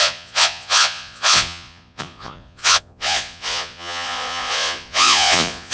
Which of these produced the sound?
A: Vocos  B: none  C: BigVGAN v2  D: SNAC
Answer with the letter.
A